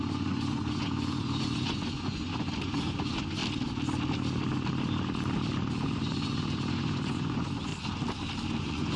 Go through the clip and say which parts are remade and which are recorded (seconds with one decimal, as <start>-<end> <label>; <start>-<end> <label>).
0.0-3.4 remade; 3.4-5.7 recorded; 5.7-7.7 remade; 7.7-8.6 recorded; 8.6-9.0 remade